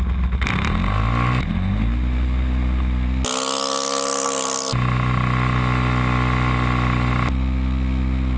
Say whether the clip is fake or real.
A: real